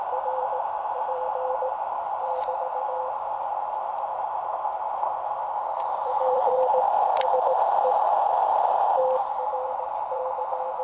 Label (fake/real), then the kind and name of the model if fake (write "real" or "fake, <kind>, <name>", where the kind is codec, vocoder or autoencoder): fake, vocoder, BigVGAN v2